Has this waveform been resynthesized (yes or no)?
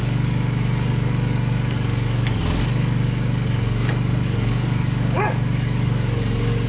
yes